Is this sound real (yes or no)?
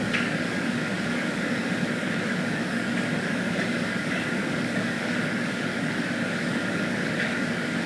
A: no